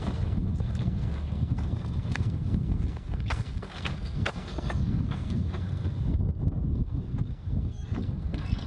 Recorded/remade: remade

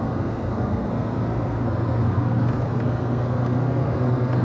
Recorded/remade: remade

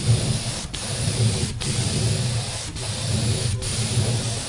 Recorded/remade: remade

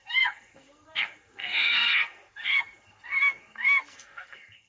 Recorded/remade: remade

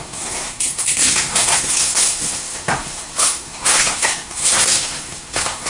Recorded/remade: remade